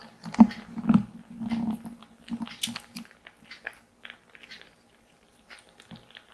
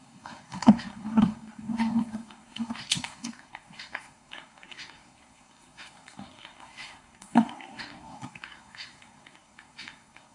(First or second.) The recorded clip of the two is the first